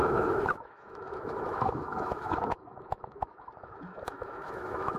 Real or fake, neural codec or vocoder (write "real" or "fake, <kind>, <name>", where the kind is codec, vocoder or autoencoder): fake, autoencoder, DAC-VAE